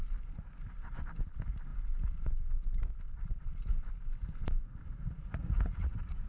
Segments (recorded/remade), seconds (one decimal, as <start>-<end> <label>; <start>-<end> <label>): 0.0-5.4 recorded; 5.4-6.3 remade